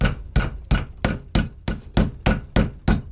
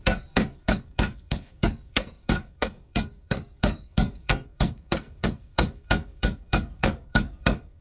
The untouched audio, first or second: first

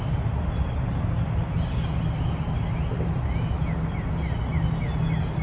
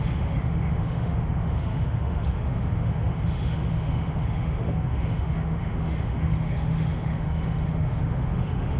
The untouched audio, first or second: first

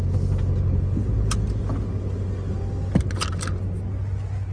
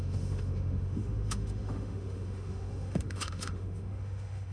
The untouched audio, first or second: first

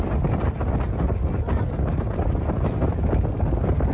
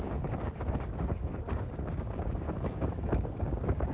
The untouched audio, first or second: first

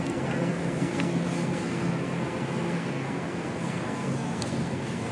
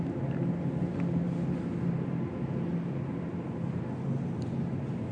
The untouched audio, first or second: second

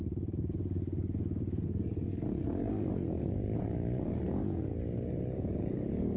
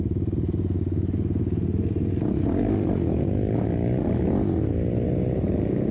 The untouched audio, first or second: second